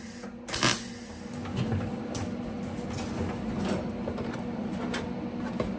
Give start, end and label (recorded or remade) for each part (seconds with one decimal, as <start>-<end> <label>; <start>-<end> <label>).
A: 0.0-5.8 recorded

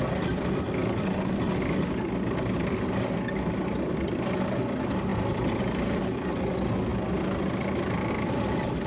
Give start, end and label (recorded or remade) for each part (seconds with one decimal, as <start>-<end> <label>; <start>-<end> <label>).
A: 0.0-5.1 recorded; 5.1-5.6 remade; 5.6-8.9 recorded

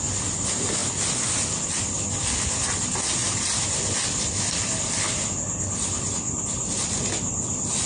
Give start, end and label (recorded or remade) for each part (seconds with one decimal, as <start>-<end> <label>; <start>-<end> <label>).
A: 0.0-0.8 recorded; 0.8-1.9 remade; 1.9-3.2 recorded; 3.2-3.8 remade; 3.8-7.9 recorded

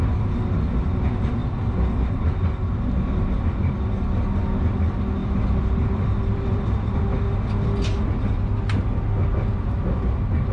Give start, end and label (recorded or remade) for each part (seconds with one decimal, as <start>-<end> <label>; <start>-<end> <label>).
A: 0.0-5.2 recorded; 5.2-6.9 remade; 6.9-10.5 recorded

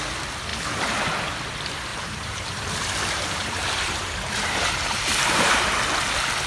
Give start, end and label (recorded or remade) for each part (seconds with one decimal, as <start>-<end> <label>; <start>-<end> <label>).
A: 0.0-1.9 recorded; 1.9-5.8 remade; 5.8-6.5 recorded